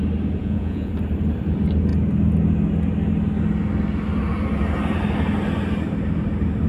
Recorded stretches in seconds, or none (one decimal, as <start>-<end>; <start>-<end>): 0.0-0.4; 0.9-6.7